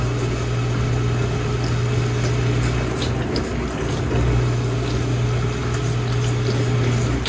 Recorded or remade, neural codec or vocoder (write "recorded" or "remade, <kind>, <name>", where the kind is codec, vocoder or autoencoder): recorded